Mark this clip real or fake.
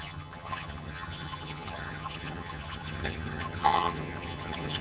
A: fake